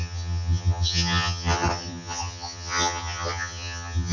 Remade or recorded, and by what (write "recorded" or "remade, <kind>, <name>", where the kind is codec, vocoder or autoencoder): remade, vocoder, HiFi-GAN